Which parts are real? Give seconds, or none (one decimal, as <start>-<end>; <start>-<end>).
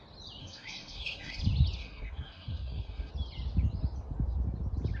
0.0-0.4; 1.4-1.8; 3.1-5.0